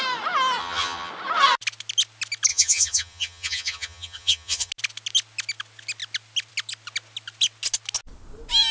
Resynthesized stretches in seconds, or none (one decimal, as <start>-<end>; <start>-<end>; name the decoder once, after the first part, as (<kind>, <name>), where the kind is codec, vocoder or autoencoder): 0.6-1.1 (vocoder, HiFi-GAN); 2.5-4.7